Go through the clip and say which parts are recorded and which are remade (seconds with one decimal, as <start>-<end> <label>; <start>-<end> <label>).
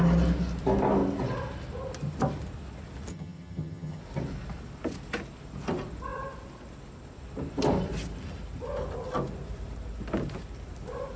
0.0-3.1 recorded; 3.1-4.0 remade; 4.0-11.2 recorded